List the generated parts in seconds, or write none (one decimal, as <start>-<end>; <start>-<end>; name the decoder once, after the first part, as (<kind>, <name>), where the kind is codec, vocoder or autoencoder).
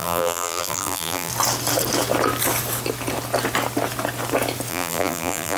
0.0-1.3 (vocoder, BigVGAN v2); 4.7-5.6